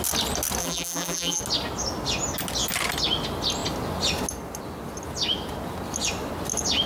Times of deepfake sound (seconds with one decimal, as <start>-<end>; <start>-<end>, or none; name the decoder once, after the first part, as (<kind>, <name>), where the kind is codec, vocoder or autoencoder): 0.6-1.4 (vocoder, BigVGAN v2)